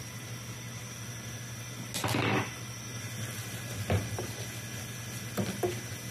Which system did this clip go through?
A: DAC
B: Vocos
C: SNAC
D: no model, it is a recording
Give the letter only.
D